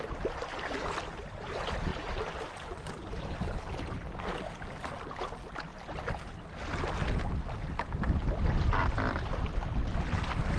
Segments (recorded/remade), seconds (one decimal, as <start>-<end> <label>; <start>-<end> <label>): 0.0-10.6 recorded